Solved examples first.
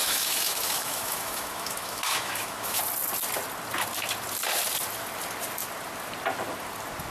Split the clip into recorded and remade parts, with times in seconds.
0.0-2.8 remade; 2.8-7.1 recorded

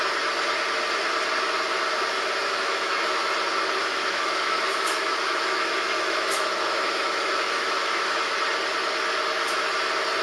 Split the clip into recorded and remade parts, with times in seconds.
0.0-2.4 recorded; 2.4-3.2 remade; 3.2-3.8 recorded; 3.8-8.3 remade; 8.3-10.2 recorded

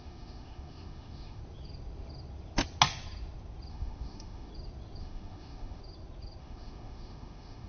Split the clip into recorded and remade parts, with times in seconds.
0.0-1.4 remade; 1.4-3.7 recorded; 3.7-4.5 remade; 4.5-5.0 recorded; 5.0-5.8 remade; 5.8-6.4 recorded; 6.4-7.7 remade